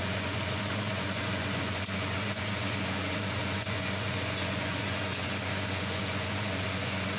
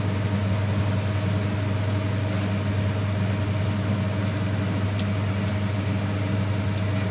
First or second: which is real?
second